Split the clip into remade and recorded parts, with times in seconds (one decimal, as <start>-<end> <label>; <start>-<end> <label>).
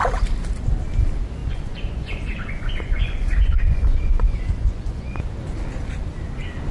0.0-1.4 recorded; 1.4-5.4 remade; 5.4-6.7 recorded